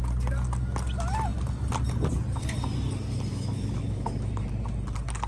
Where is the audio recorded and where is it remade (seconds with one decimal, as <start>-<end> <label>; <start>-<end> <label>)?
0.0-3.3 recorded; 3.3-4.3 remade; 4.3-5.3 recorded